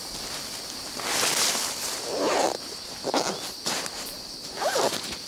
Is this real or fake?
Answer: real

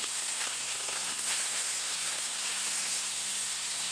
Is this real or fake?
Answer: fake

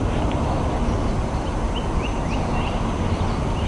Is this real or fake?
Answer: real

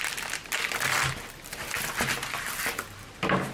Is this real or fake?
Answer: real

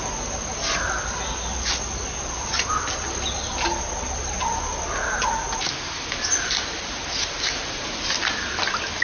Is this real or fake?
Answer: real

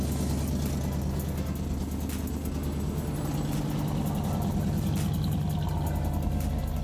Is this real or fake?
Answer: real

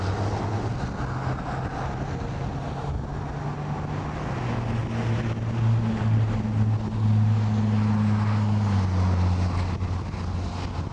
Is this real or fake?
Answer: real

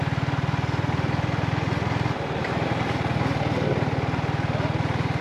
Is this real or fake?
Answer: real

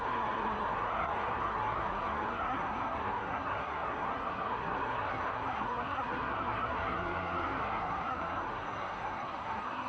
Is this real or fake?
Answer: fake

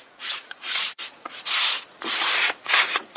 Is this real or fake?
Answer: fake